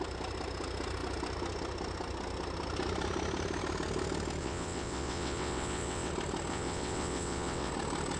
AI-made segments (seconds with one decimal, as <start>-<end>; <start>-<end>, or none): 4.4-6.1; 6.5-7.7